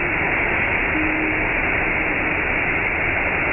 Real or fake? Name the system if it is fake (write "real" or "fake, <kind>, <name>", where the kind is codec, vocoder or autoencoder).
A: real